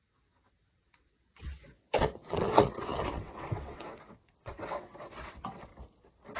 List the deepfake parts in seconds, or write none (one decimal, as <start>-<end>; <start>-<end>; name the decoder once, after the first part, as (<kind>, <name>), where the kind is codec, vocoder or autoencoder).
0.0-5.7 (vocoder, WaveNeXt)